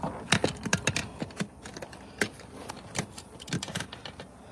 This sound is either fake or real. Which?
real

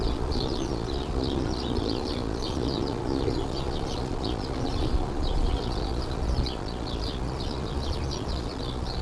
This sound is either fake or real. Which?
fake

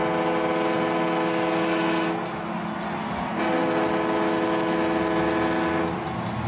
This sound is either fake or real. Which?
real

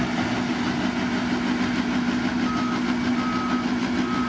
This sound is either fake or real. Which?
real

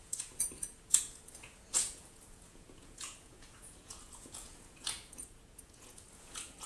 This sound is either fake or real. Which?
fake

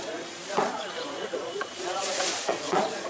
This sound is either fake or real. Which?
fake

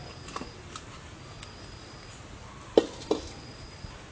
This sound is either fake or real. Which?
real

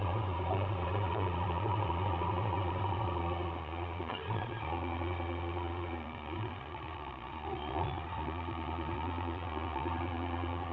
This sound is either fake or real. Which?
fake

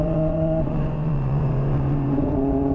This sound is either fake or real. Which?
fake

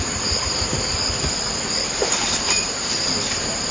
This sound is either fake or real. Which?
real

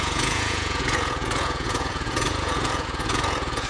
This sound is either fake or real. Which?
fake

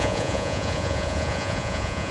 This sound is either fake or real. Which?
fake